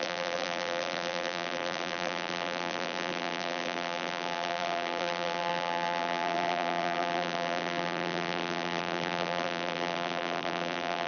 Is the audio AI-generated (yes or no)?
yes